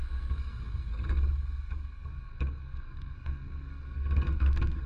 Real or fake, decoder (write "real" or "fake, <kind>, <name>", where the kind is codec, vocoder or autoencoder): fake, codec, SNAC